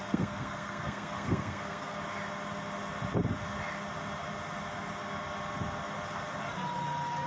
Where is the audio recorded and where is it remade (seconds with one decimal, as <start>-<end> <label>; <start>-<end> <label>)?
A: 0.0-2.0 remade; 2.0-7.3 recorded